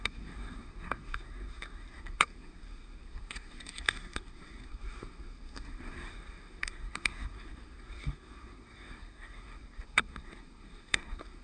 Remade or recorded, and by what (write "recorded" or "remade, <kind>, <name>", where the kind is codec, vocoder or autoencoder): remade, codec, SNAC